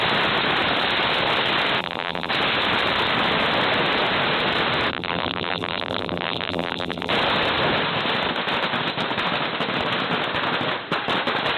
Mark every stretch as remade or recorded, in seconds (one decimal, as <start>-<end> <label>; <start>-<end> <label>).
0.0-1.8 recorded; 1.8-2.3 remade; 2.3-4.9 recorded; 4.9-7.1 remade; 7.1-11.6 recorded

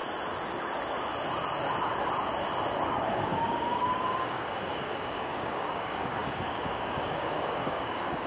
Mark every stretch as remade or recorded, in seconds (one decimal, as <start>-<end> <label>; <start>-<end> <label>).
0.0-2.9 recorded; 2.9-8.3 remade